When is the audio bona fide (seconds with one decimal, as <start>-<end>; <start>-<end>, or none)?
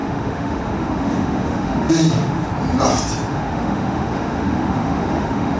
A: 2.5-3.3